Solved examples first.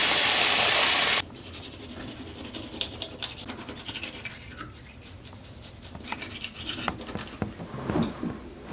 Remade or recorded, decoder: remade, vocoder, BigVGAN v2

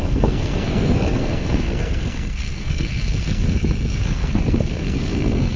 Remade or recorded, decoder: remade, codec, SNAC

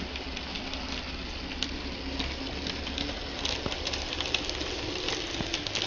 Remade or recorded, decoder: recorded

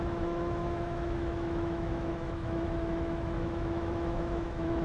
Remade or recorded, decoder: remade, autoencoder, DAC-VAE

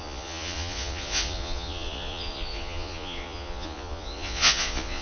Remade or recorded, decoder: remade, vocoder, Vocos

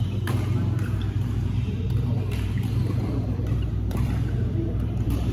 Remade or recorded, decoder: remade, vocoder, BigVGAN v2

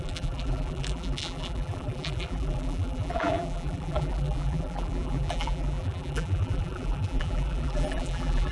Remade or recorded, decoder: remade, vocoder, BigVGAN v2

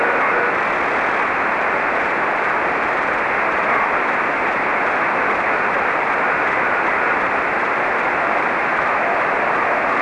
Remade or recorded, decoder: recorded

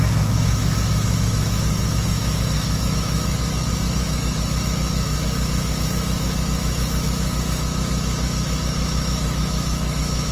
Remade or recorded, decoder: remade, autoencoder, DAC-VAE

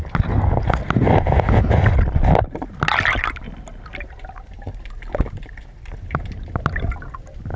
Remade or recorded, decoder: recorded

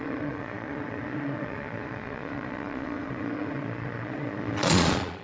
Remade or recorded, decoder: remade, vocoder, Vocos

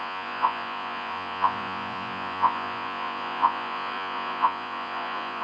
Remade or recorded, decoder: remade, vocoder, Vocos